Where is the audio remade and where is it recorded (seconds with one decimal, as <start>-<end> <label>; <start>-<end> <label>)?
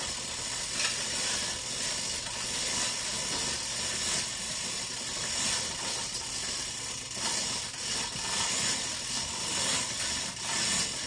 0.0-11.1 recorded